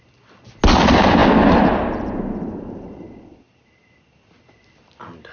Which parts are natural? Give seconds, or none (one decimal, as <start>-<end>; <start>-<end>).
0.0-5.3